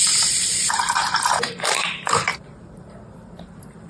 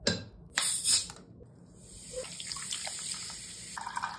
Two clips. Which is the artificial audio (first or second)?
first